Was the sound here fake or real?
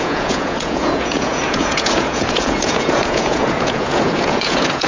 fake